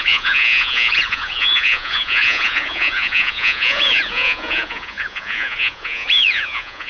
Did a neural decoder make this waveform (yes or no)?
yes